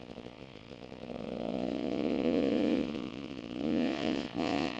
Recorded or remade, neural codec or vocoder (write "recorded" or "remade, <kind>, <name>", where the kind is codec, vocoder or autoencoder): remade, vocoder, Vocos